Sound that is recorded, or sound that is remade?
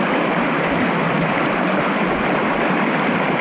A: recorded